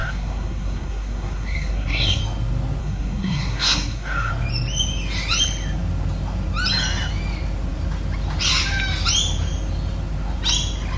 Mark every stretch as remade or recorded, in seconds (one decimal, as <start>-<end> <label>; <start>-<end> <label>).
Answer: 0.0-2.2 remade; 2.2-2.8 recorded; 2.8-4.3 remade; 4.3-11.0 recorded